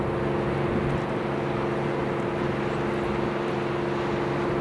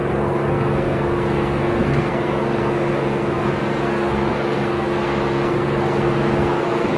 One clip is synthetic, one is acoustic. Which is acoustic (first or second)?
first